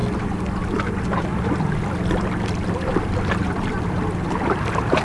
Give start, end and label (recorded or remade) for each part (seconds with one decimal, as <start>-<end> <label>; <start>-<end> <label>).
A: 0.0-5.0 recorded